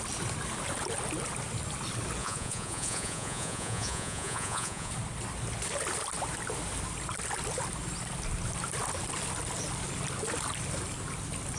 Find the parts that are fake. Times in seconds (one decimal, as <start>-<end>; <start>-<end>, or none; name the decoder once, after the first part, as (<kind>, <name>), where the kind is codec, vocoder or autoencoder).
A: 2.2-4.9 (vocoder, Vocos)